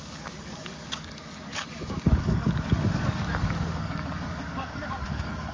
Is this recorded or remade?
remade